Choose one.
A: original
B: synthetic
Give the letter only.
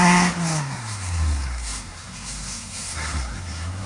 B